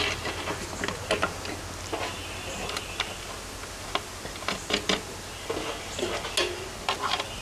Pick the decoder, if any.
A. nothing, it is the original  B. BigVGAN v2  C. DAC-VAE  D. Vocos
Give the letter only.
A